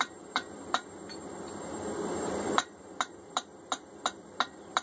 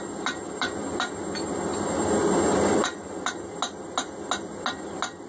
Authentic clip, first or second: second